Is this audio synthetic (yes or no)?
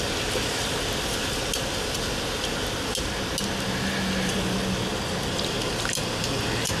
no